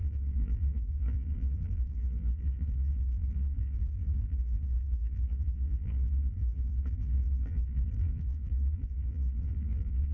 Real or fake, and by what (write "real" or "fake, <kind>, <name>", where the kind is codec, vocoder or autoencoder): fake, vocoder, BigVGAN v2